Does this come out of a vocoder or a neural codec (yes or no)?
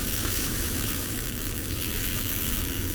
yes